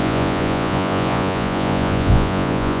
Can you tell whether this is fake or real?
fake